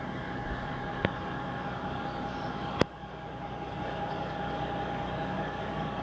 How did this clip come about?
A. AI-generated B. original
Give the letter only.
A